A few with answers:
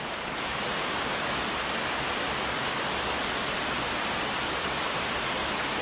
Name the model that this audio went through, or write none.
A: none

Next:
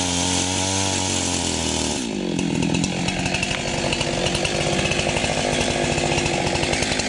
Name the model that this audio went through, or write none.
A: none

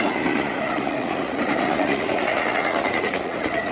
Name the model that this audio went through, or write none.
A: vocoder, Vocos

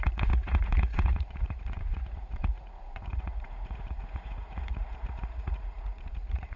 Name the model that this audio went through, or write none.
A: vocoder, Vocos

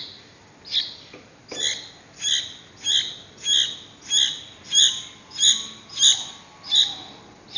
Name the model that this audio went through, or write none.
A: none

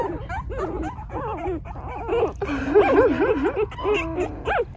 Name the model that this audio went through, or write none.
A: none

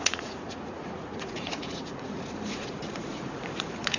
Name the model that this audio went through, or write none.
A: vocoder, Vocos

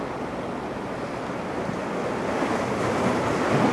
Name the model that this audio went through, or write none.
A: none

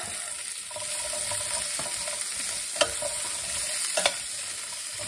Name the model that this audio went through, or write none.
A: none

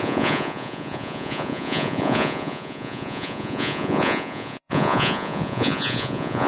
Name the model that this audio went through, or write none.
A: vocoder, Vocos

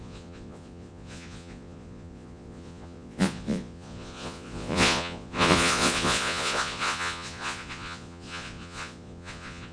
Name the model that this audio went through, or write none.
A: vocoder, Vocos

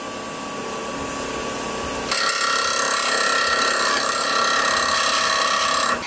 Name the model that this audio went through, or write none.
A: none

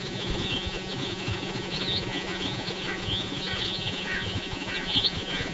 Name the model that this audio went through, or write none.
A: vocoder, Vocos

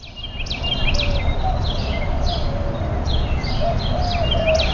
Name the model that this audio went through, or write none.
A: none